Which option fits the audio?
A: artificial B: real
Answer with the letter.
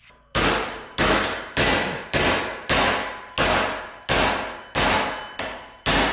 B